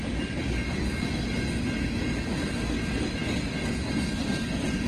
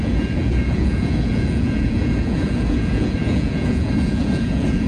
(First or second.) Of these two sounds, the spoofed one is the second